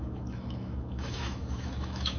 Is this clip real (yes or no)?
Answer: no